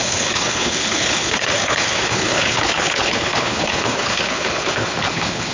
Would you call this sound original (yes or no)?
no